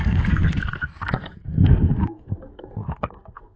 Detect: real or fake fake